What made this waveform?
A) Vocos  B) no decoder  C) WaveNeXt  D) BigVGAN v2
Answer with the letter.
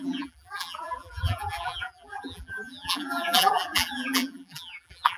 D